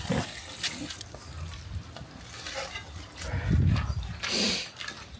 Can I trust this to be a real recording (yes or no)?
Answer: yes